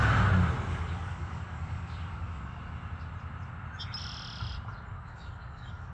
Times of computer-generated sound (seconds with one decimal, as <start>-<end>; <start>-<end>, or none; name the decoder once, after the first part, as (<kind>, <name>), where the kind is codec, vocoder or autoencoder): 0.7-2.6 (codec, DAC); 4.9-5.9